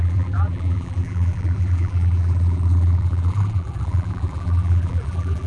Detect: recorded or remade remade